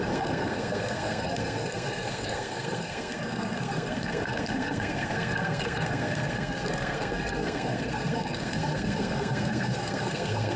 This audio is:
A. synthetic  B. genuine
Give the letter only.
A